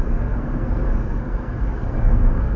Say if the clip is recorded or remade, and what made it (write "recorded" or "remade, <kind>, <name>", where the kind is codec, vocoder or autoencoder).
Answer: remade, codec, SNAC